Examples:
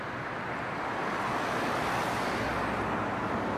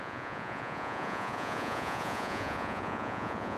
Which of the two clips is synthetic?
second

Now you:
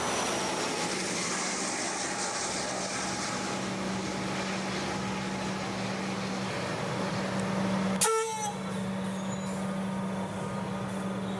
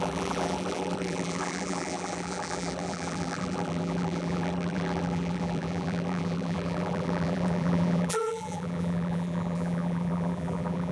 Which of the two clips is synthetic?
second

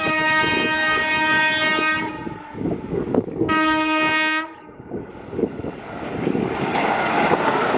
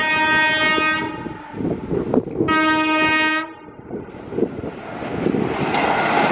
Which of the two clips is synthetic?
first